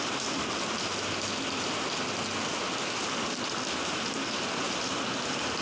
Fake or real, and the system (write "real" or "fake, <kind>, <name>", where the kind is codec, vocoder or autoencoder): real